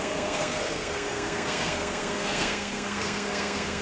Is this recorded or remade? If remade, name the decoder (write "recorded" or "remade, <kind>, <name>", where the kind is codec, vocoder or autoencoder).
remade, codec, SNAC